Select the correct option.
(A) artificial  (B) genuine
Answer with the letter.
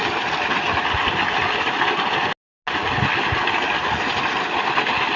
B